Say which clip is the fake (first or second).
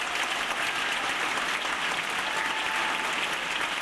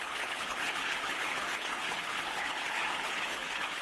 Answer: second